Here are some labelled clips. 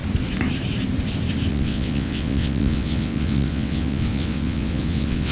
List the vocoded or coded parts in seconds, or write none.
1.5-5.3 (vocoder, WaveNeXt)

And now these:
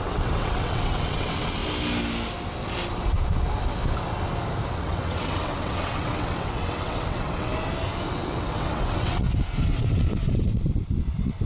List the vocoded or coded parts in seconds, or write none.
0.0-1.6 (vocoder, WaveNeXt); 4.7-7.5; 8.1-11.5

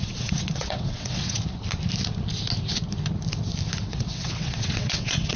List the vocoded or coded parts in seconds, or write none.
0.0-1.4 (vocoder, WaveNeXt); 3.8-5.4

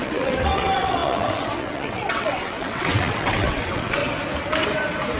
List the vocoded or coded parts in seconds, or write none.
0.0-4.0 (vocoder, WaveNeXt)

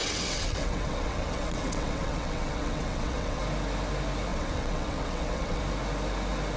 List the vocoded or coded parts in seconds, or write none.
0.0-3.4 (vocoder, WaveNeXt); 4.3-5.6

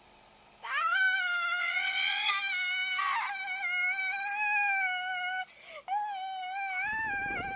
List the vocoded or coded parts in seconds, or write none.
1.6-2.3 (vocoder, WaveNeXt)

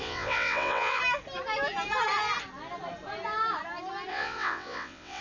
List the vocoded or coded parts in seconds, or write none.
0.0-1.0 (vocoder, WaveNeXt); 4.1-5.2

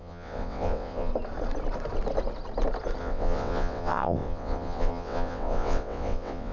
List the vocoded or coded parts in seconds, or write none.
0.0-1.1 (vocoder, WaveNeXt); 3.0-6.5